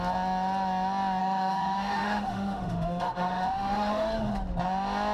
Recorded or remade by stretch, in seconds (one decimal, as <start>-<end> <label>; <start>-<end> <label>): 0.0-1.2 recorded; 1.2-4.3 remade; 4.3-5.1 recorded